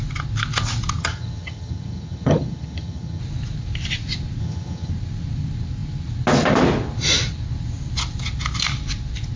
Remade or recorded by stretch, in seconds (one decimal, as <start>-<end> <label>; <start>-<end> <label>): 0.0-1.0 recorded; 1.0-3.2 remade; 3.2-4.4 recorded; 4.4-4.9 remade; 4.9-9.4 recorded